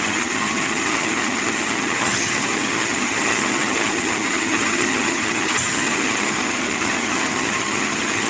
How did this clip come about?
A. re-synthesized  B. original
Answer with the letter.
A